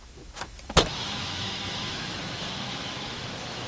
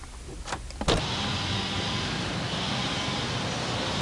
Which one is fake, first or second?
first